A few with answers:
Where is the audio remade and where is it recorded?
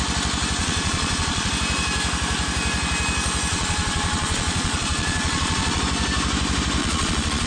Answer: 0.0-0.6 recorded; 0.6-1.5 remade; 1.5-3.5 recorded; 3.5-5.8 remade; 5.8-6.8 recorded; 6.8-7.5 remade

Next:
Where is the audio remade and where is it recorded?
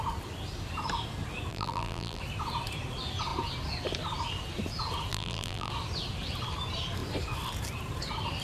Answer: 0.0-1.5 recorded; 1.5-2.2 remade; 2.2-5.1 recorded; 5.1-5.7 remade; 5.7-8.4 recorded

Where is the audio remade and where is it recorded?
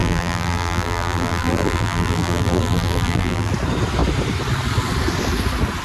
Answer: 0.0-3.5 remade; 3.5-5.8 recorded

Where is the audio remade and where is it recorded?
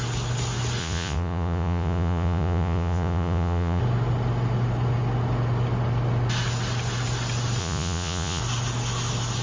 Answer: 0.0-0.8 recorded; 0.8-3.8 remade; 3.8-7.6 recorded; 7.6-8.4 remade; 8.4-9.4 recorded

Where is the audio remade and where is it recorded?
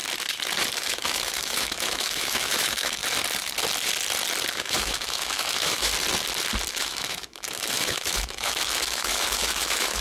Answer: 0.0-0.8 recorded; 0.8-3.0 remade; 3.0-4.5 recorded; 4.5-5.9 remade; 5.9-6.7 recorded; 6.7-10.0 remade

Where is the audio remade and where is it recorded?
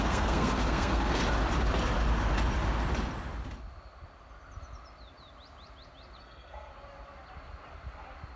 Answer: 0.0-1.2 remade; 1.2-6.2 recorded; 6.2-6.7 remade; 6.7-8.4 recorded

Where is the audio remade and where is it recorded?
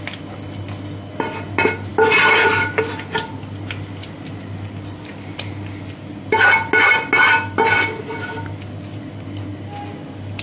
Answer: 0.0-10.4 recorded